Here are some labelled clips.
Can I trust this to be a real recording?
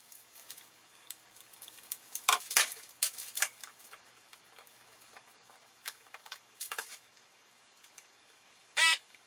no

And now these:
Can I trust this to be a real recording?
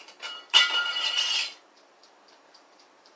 no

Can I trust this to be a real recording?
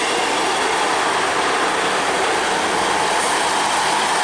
yes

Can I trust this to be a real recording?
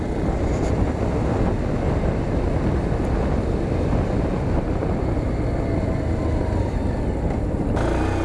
yes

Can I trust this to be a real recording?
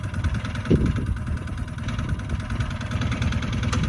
no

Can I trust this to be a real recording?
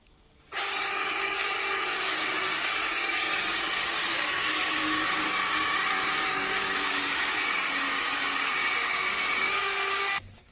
no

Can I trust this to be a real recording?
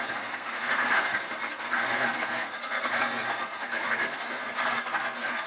no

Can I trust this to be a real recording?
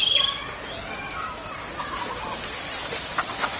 yes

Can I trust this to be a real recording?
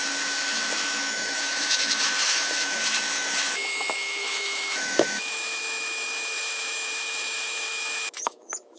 no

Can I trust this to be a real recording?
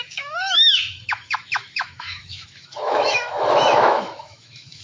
no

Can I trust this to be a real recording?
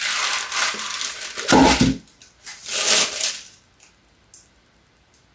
yes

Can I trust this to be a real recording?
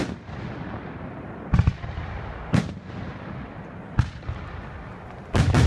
yes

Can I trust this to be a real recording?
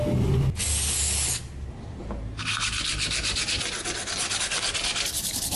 yes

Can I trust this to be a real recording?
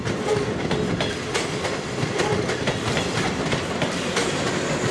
yes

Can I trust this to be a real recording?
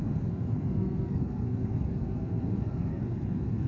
no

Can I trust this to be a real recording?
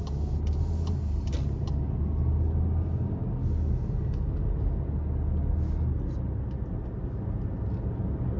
yes